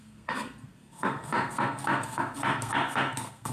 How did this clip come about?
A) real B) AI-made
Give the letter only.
B